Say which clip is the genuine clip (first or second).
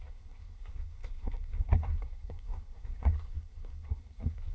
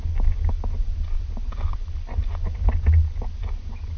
second